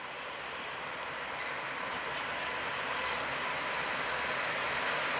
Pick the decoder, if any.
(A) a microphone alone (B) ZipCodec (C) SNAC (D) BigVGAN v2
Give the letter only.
A